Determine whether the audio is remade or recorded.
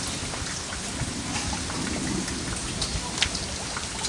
recorded